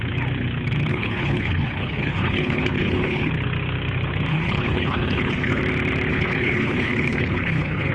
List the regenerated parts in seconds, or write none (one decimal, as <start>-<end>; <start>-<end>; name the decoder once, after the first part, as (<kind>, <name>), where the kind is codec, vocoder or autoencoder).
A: 0.9-3.3 (codec, HILCodec); 4.3-5.6; 6.1-7.9